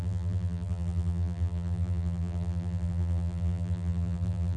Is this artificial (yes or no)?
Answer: yes